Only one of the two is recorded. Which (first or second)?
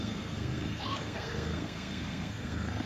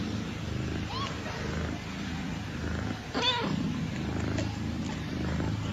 second